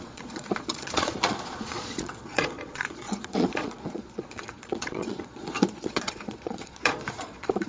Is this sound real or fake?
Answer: fake